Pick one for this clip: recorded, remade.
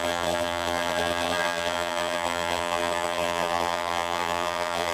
remade